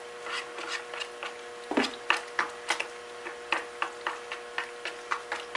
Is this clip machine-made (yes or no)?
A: no